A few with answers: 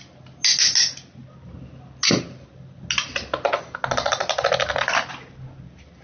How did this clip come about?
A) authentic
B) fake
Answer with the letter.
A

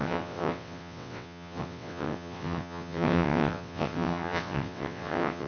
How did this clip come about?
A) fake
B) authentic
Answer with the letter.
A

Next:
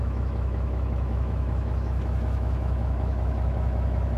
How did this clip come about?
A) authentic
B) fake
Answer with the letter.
B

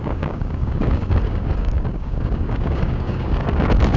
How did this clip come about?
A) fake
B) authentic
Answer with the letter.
A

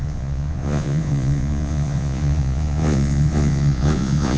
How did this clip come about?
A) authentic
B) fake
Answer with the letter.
B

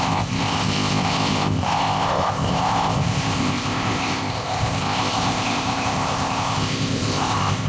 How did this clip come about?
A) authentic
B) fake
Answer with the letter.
B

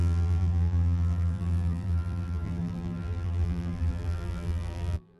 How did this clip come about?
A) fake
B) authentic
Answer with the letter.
A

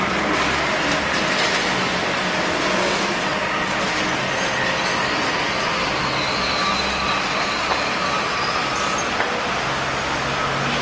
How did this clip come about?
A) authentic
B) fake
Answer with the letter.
A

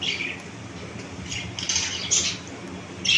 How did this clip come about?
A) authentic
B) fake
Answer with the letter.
A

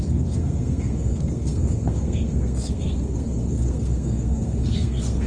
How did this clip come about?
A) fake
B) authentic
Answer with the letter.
A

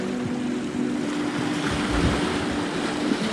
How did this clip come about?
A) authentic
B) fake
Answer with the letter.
A